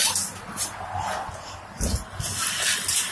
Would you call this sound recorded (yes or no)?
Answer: yes